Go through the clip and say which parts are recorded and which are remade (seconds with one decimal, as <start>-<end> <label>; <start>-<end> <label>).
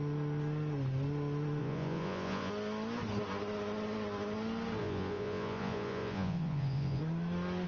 0.0-1.6 recorded; 1.6-2.5 remade; 2.5-4.8 recorded; 4.8-7.0 remade; 7.0-7.7 recorded